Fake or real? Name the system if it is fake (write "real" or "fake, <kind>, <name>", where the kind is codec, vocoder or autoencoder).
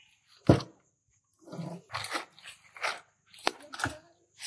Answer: real